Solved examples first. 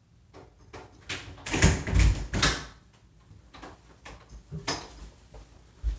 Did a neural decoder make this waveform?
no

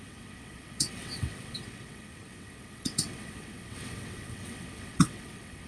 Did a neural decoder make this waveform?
yes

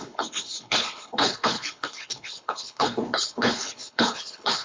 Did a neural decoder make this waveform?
yes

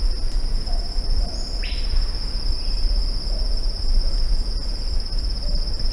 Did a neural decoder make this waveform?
no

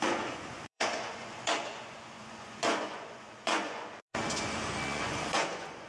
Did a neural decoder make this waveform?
yes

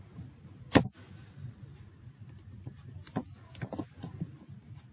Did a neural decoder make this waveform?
no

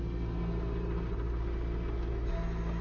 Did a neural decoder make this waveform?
no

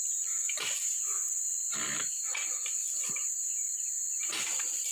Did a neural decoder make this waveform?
yes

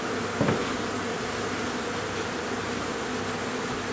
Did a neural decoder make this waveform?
no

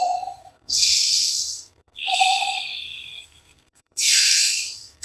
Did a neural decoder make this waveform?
yes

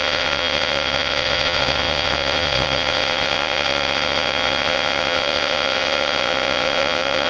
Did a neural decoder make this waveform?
yes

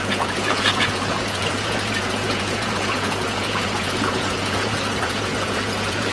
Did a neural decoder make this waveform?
yes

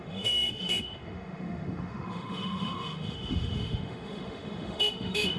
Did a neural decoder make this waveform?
yes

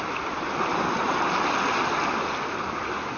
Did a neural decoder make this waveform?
no